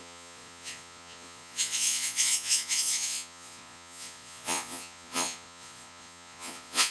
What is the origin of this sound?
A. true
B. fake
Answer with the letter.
B